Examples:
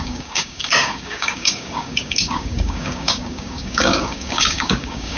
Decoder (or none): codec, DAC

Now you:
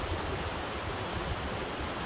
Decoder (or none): vocoder, BigVGAN v2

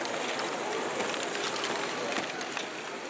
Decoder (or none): none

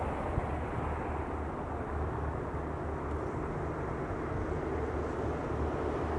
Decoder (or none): none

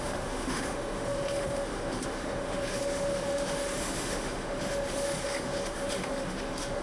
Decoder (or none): autoencoder, DAC-VAE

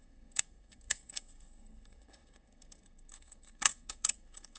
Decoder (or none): codec, SNAC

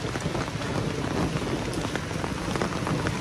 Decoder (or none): none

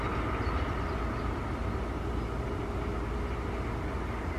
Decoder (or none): none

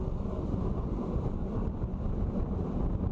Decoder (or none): none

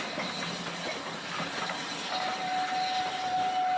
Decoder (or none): none